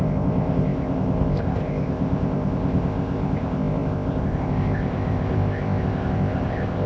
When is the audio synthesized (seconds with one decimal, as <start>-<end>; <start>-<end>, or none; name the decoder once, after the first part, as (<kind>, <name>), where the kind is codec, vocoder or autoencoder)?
0.0-6.9 (codec, ZipCodec)

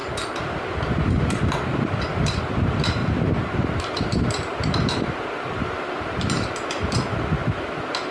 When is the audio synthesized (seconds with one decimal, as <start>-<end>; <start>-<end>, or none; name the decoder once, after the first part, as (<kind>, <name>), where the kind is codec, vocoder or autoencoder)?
0.0-2.4 (vocoder, BigVGAN v2); 3.0-7.6

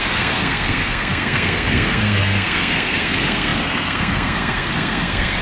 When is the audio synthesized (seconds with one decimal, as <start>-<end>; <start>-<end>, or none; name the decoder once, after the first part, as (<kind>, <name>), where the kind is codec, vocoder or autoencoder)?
0.0-5.4 (codec, SNAC)